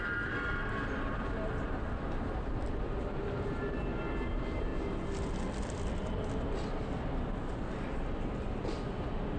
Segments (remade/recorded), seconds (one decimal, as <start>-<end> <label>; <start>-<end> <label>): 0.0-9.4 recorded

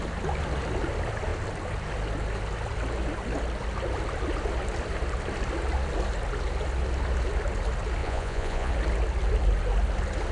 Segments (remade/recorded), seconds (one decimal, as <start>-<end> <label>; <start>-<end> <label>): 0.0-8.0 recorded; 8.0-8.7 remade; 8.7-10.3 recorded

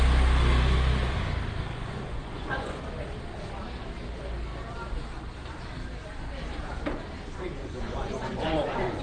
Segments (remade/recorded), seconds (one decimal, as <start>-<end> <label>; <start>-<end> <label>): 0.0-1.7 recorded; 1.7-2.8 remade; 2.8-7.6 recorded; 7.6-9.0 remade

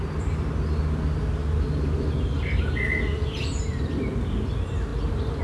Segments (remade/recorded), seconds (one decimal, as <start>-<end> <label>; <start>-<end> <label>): 0.0-5.4 recorded

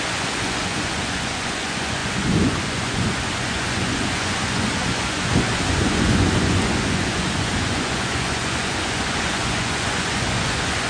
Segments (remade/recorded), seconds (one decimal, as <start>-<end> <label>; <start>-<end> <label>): 0.0-10.9 remade

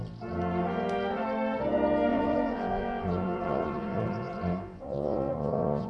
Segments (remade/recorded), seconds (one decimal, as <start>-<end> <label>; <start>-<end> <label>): 0.0-2.1 recorded; 2.1-5.9 remade